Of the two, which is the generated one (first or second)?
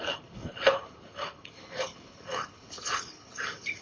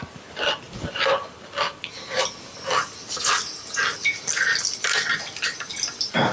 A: first